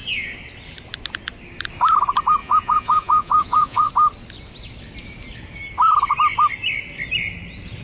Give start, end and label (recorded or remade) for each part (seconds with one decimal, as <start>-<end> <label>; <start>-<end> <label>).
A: 0.0-2.4 recorded; 2.4-3.9 remade; 3.9-7.8 recorded